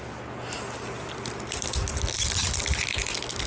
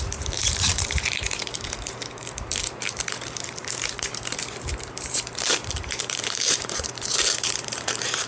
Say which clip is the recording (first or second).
first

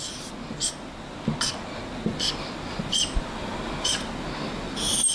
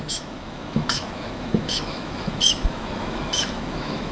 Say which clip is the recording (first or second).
first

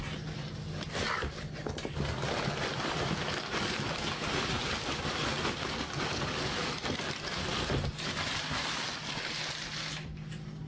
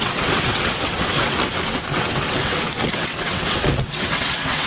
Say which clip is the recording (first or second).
first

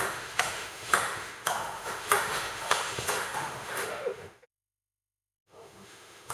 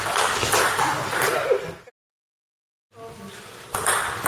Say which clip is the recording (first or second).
second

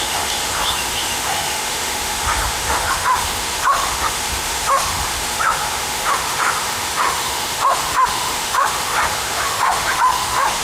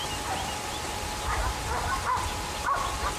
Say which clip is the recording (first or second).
second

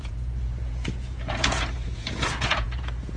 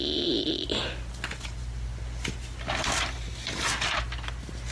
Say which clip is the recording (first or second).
second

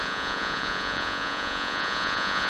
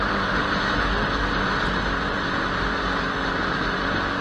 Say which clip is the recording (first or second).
second